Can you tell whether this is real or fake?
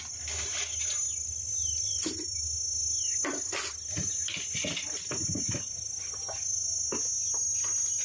real